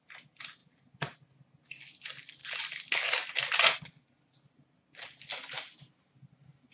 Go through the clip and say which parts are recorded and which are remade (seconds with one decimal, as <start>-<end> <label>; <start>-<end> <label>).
0.0-6.7 recorded